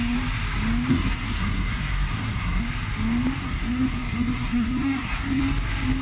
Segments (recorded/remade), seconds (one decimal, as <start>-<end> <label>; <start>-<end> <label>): 0.0-0.9 recorded; 0.9-2.6 remade; 2.6-3.4 recorded; 3.4-5.4 remade; 5.4-6.0 recorded